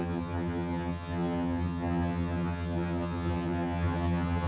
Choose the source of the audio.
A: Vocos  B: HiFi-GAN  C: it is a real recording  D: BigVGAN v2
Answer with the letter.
B